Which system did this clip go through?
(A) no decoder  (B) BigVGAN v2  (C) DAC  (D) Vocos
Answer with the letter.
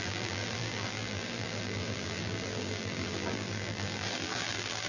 B